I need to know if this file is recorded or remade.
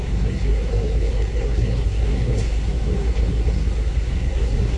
remade